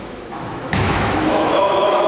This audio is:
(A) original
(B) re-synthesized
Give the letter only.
B